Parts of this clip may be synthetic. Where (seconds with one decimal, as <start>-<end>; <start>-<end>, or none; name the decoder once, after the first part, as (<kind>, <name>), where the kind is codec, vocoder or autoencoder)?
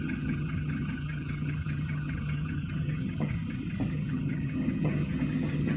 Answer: 0.0-3.3 (vocoder, HiFi-GAN); 3.9-5.8